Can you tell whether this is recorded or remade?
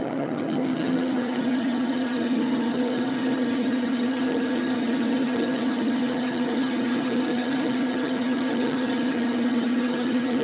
remade